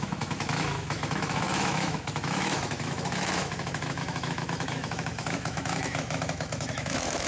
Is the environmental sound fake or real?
fake